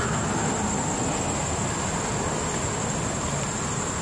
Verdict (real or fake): real